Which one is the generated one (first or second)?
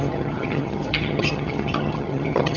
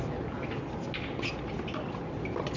first